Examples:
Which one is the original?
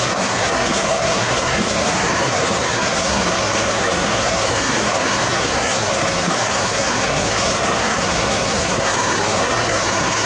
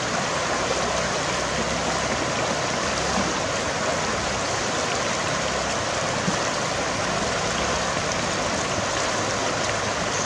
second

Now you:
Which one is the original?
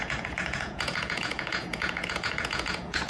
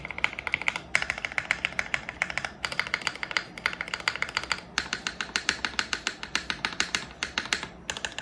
second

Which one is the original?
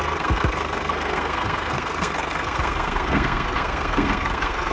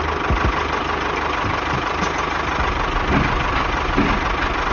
second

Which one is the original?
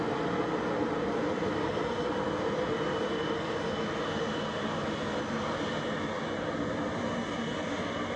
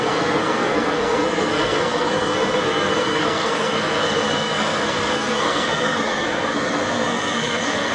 first